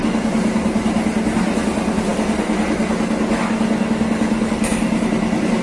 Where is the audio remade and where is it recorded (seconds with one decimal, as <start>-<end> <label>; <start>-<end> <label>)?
0.0-5.6 recorded